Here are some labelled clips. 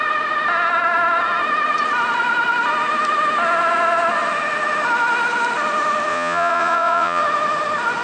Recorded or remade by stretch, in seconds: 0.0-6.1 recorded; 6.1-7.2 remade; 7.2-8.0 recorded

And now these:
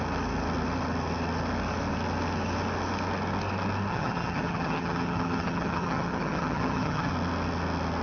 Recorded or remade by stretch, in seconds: 0.0-3.9 recorded; 3.9-7.1 remade; 7.1-8.0 recorded

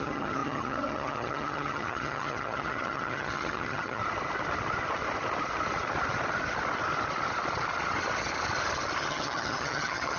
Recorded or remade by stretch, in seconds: 0.0-4.0 remade; 4.0-9.1 recorded; 9.1-10.2 remade

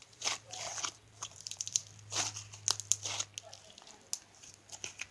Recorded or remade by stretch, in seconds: 0.0-1.8 remade; 1.8-5.1 recorded

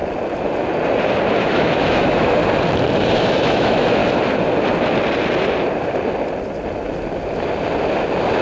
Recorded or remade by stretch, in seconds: 0.0-1.4 recorded; 1.4-2.4 remade; 2.4-3.2 recorded; 3.2-4.0 remade; 4.0-8.4 recorded

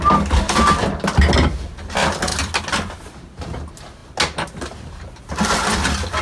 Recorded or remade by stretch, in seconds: 0.0-6.2 recorded

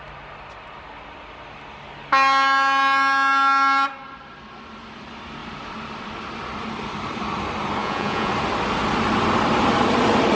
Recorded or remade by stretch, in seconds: 0.0-7.8 recorded; 7.8-8.3 remade; 8.3-10.3 recorded